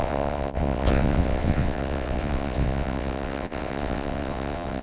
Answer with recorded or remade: remade